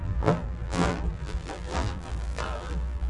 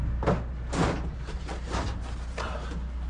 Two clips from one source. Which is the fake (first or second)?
first